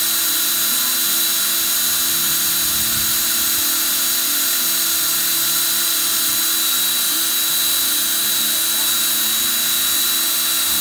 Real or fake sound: real